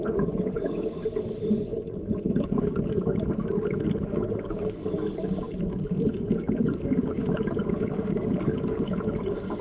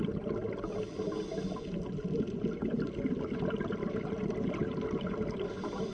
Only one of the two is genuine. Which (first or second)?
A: second